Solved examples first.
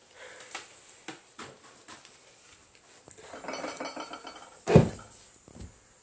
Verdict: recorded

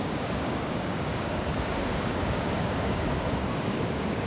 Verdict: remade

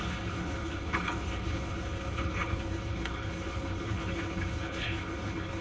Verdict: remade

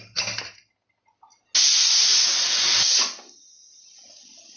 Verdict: recorded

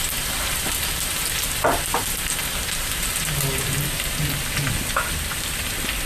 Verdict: recorded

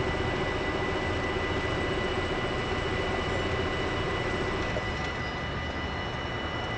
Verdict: recorded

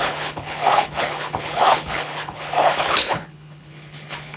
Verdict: remade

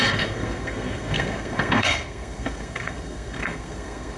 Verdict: remade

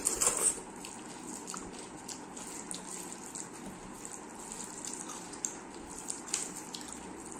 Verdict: recorded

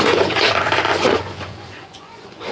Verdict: remade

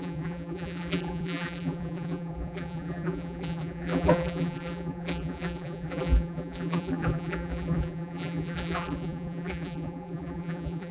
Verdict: remade